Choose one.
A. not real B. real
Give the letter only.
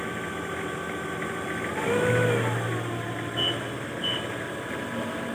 B